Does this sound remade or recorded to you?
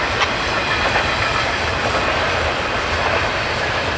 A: remade